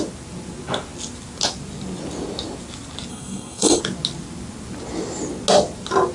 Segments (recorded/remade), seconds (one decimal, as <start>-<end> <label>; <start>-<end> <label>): 0.0-3.1 recorded; 3.1-3.8 remade; 3.8-6.1 recorded